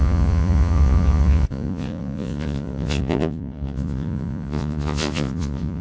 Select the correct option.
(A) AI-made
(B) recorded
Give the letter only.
A